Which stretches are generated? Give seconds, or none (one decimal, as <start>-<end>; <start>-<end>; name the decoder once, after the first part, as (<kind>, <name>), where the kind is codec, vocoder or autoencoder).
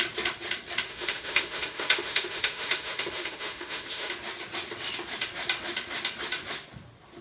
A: 0.9-4.1 (autoencoder, DAC-VAE)